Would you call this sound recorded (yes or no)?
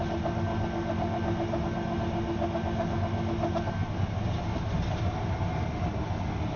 yes